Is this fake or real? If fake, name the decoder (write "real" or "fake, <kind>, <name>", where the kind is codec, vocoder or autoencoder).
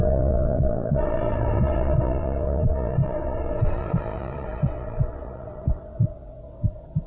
fake, vocoder, WaveNeXt